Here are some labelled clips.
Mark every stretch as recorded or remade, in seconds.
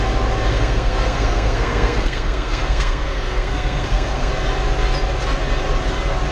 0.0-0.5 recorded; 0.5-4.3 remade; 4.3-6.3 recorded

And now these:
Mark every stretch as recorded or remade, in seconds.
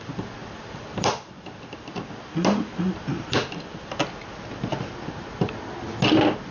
0.0-0.4 recorded; 0.4-4.3 remade; 4.3-6.5 recorded